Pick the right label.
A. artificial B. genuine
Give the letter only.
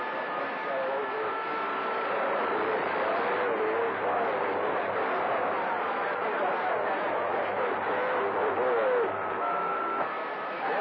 B